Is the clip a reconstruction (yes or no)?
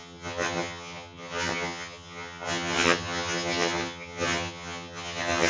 yes